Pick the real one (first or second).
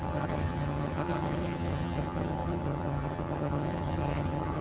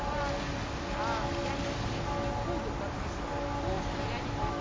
second